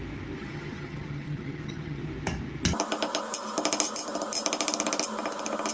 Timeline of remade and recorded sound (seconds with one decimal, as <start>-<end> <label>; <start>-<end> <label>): 0.0-0.4 recorded; 0.4-2.0 remade; 2.0-5.7 recorded